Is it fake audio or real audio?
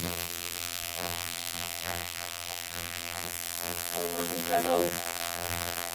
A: fake